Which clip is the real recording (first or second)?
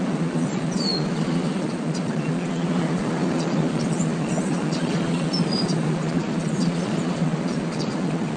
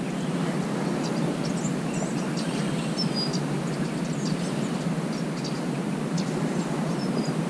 second